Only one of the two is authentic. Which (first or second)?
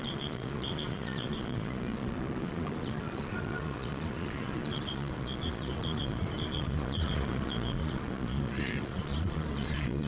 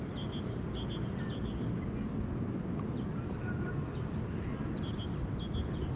second